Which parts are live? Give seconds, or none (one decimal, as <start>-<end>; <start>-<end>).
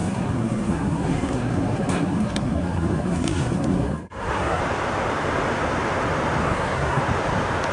4.6-6.4; 7.0-7.7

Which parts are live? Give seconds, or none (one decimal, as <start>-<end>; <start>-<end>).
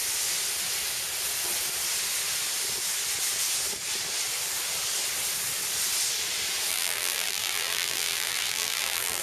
0.0-6.7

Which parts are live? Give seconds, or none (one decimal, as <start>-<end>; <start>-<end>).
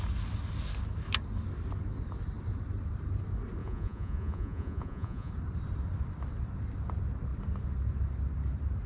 0.0-3.6; 5.3-8.9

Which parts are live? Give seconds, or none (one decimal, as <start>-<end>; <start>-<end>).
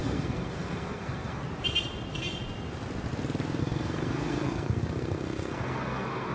1.4-3.6